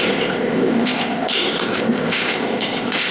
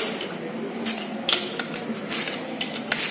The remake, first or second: first